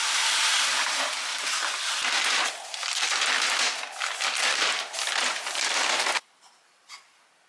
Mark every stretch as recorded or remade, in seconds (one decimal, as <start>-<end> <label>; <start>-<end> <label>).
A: 0.0-7.5 recorded